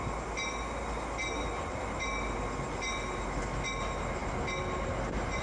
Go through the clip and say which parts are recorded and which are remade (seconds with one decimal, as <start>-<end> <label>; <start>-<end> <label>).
0.0-5.4 recorded